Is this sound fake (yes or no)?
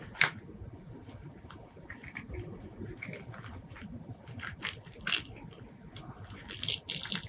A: no